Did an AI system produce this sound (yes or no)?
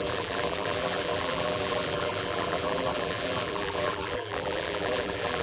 yes